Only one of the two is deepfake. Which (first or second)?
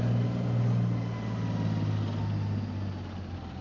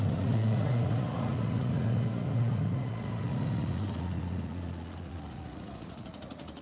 second